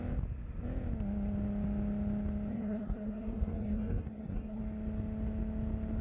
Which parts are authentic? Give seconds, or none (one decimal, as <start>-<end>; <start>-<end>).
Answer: 0.0-2.5; 4.6-6.0